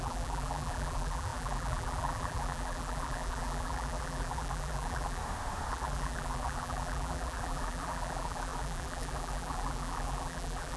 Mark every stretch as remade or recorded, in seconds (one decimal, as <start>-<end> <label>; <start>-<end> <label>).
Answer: 0.0-5.2 remade; 5.2-5.7 recorded; 5.7-10.8 remade